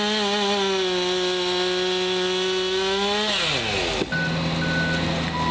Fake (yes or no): no